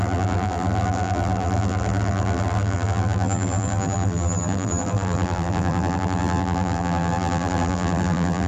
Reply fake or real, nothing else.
fake